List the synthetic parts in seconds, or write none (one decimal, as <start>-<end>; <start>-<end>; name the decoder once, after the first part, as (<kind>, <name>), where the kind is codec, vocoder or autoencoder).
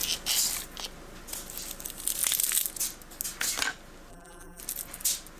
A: 4.1-4.6 (vocoder, BigVGAN v2)